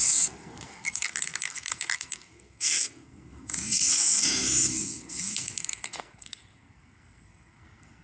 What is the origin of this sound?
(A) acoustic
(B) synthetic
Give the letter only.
B